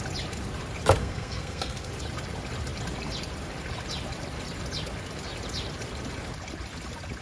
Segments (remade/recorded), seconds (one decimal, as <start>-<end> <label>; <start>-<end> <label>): 0.0-1.0 recorded; 1.0-1.9 remade; 1.9-7.2 recorded